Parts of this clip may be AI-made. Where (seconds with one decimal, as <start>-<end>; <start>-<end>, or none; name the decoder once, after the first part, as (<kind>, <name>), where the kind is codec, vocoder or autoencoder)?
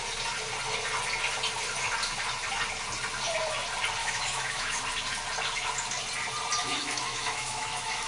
4.0-4.8 (autoencoder, DAC-VAE); 6.6-8.1